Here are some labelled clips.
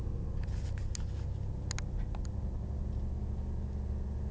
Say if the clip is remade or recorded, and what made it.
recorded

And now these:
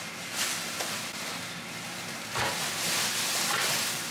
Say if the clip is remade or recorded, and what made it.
recorded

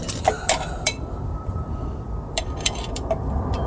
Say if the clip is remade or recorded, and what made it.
remade, vocoder, BigVGAN v2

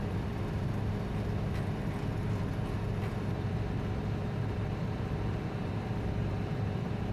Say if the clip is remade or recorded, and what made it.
remade, vocoder, BigVGAN v2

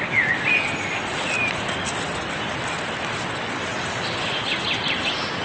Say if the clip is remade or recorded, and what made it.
recorded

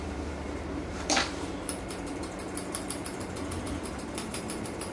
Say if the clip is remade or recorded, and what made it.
remade, vocoder, BigVGAN v2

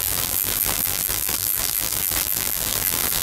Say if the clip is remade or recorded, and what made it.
remade, vocoder, BigVGAN v2